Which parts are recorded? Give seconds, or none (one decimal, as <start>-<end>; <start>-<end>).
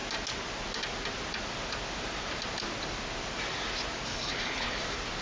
0.0-4.1; 4.8-5.2